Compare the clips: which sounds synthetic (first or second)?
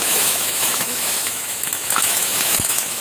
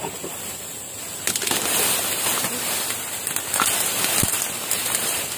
first